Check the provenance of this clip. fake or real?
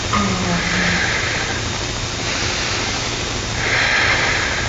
real